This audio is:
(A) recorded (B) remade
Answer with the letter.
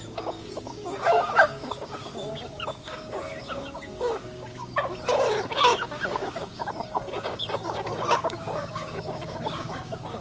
B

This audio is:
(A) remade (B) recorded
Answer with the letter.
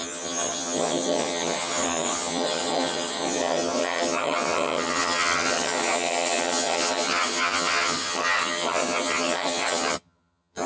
A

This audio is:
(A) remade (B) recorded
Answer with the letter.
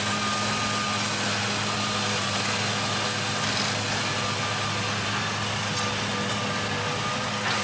B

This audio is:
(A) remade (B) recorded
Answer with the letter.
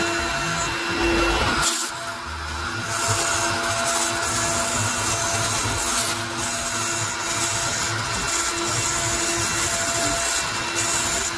B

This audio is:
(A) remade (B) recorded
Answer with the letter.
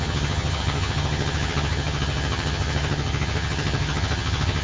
A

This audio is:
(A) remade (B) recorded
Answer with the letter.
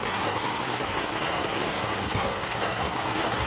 A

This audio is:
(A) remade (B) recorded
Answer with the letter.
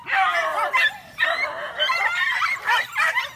A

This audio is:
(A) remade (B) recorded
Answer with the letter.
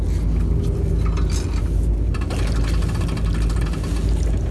B